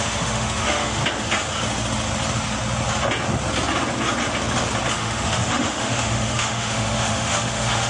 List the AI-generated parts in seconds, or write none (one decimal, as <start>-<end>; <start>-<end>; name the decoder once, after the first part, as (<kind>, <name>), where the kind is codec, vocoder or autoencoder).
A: 0.0-1.0 (autoencoder, DAC-VAE); 4.9-7.9